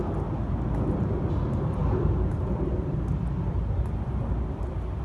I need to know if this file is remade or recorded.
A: recorded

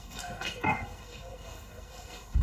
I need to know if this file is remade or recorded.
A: remade